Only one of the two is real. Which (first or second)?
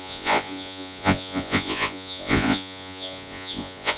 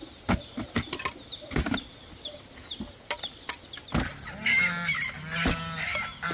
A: second